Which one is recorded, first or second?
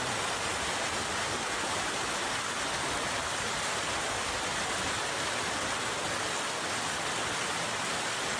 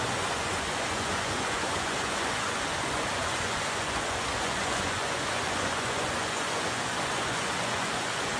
first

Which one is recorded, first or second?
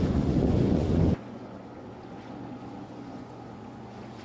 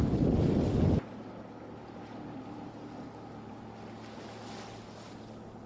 second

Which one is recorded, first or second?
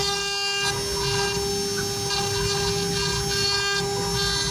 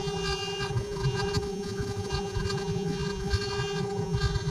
first